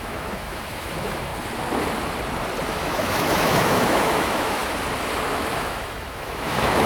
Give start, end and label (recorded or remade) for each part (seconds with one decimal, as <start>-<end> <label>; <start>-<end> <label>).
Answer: 0.0-1.3 remade; 1.3-2.7 recorded; 2.7-4.6 remade; 4.6-5.3 recorded; 5.3-6.9 remade